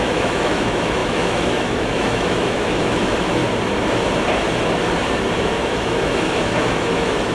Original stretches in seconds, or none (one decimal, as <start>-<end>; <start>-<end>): 3.4-5.4